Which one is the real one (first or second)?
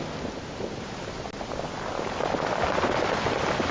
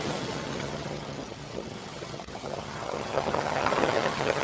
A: first